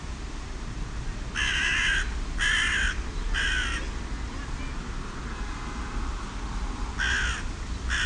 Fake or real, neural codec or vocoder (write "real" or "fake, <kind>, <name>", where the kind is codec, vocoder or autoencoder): real